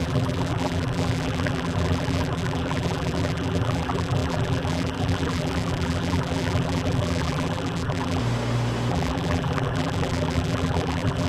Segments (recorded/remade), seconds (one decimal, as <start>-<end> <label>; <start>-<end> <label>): 0.0-8.2 remade; 8.2-8.9 recorded; 8.9-11.3 remade